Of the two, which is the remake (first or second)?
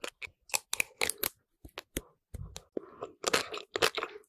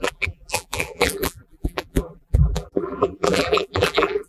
second